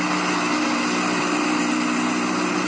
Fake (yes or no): no